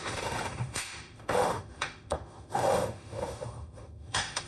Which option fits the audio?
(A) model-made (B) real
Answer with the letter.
A